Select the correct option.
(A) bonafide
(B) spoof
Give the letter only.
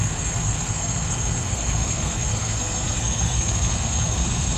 B